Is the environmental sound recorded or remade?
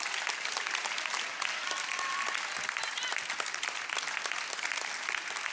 recorded